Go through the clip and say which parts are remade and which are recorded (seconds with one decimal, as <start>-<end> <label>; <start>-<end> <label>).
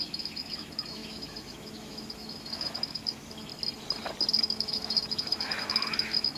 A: 0.0-3.5 remade; 3.5-4.4 recorded; 4.4-6.4 remade